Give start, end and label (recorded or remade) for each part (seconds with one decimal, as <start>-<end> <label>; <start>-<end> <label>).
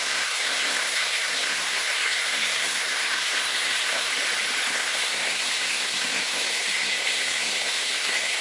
0.0-4.1 remade; 4.1-4.7 recorded; 4.7-8.4 remade